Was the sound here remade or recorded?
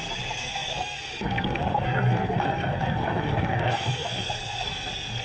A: remade